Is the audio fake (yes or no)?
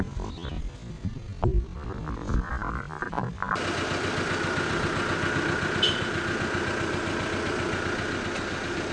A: no